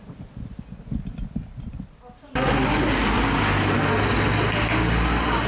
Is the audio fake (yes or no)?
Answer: no